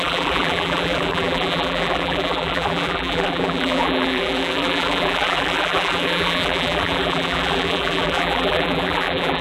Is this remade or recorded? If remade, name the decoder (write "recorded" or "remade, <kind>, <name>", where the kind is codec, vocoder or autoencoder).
remade, vocoder, BigVGAN v2